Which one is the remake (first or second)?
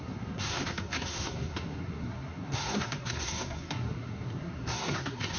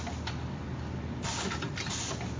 first